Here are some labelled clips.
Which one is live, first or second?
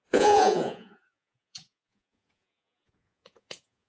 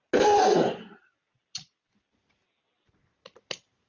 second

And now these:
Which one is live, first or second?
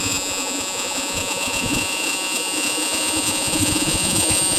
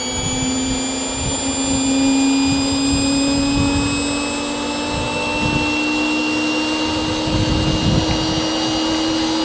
second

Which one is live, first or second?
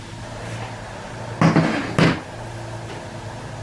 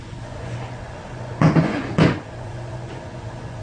first